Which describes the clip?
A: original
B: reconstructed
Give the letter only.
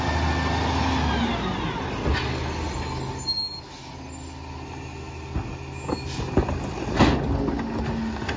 A